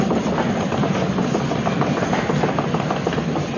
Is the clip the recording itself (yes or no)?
yes